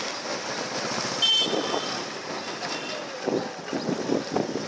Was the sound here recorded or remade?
recorded